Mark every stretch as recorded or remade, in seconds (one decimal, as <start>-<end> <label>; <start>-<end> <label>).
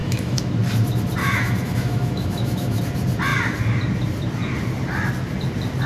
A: 0.0-0.5 remade; 0.5-1.2 recorded; 1.2-2.8 remade; 2.8-5.9 recorded